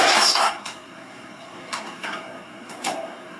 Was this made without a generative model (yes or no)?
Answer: no